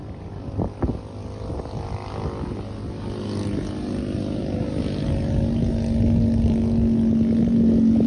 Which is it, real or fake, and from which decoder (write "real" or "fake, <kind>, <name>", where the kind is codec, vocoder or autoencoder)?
real